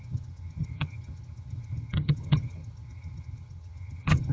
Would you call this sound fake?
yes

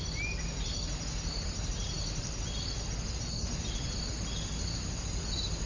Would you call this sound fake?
no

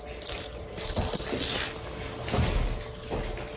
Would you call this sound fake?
no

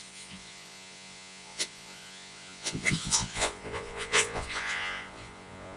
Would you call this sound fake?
yes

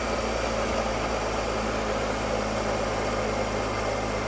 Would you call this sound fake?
no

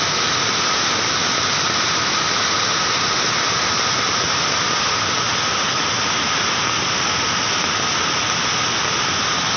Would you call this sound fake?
no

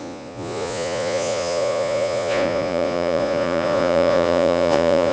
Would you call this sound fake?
yes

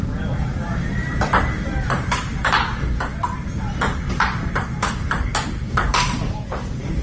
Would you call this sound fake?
yes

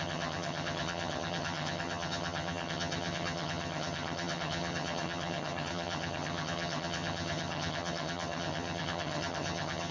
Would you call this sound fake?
yes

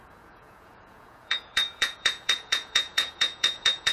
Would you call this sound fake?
yes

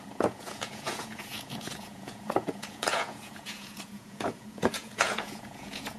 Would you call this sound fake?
yes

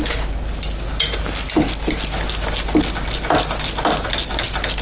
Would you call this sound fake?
no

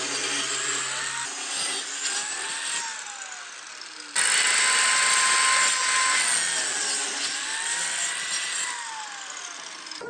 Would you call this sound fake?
no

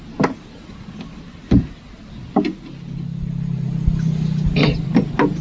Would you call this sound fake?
no